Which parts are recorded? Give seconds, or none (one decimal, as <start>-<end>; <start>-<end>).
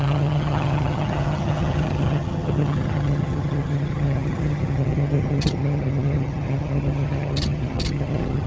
none